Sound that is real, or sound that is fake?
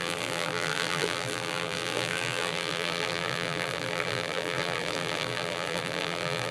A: fake